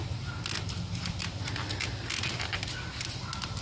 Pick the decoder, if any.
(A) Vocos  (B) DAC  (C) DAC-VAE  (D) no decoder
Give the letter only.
D